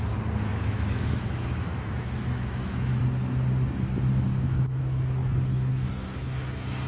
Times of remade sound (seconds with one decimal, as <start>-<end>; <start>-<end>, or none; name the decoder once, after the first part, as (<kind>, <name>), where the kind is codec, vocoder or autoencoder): 0.5-3.0 (autoencoder, DAC-VAE); 4.3-4.8